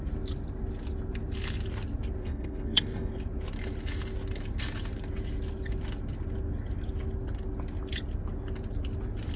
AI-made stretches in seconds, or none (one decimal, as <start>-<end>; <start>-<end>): 2.2-3.1